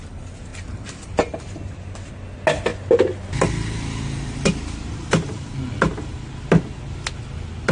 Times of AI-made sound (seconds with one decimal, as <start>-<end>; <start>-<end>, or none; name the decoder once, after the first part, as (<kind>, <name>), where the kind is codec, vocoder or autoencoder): 0.5-2.1 (vocoder, BigVGAN v2)